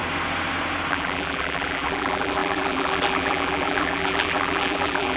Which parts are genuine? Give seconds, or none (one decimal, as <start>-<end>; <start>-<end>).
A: 0.0-0.9